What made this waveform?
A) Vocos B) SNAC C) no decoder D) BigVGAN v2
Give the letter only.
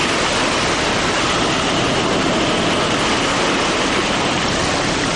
C